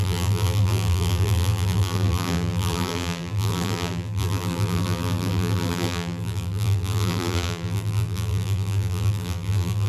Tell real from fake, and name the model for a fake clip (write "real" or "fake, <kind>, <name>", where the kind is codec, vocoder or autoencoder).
fake, vocoder, BigVGAN v2